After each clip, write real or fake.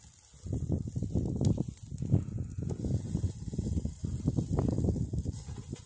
real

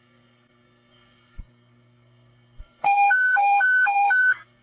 fake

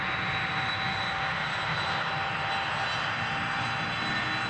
real